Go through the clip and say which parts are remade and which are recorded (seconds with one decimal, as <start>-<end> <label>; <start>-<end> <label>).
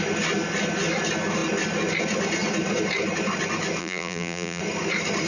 0.0-3.8 recorded; 3.8-4.6 remade; 4.6-5.3 recorded